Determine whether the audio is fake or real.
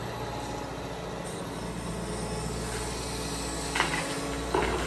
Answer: real